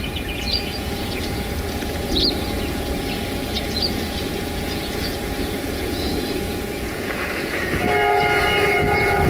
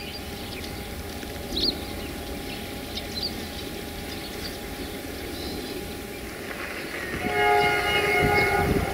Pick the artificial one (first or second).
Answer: first